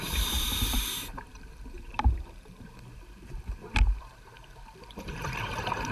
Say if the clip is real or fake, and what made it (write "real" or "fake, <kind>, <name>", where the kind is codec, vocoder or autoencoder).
fake, vocoder, BigVGAN v2